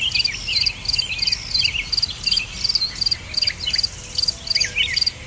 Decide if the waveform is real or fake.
real